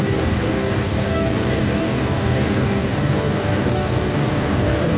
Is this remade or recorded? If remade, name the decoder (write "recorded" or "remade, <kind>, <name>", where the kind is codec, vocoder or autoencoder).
remade, codec, DAC